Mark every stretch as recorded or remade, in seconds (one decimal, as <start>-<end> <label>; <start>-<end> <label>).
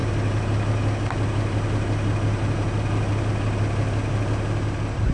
0.0-5.1 recorded